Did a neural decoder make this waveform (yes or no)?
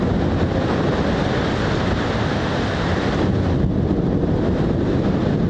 no